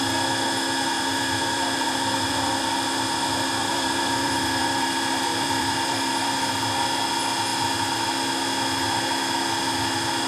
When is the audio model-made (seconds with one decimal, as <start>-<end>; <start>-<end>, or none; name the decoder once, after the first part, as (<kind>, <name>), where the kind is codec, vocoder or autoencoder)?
1.1-2.7 (vocoder, BigVGAN v2); 3.6-6.6